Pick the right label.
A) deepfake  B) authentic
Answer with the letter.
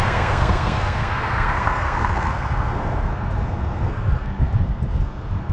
A